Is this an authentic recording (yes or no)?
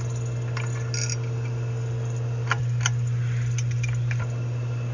yes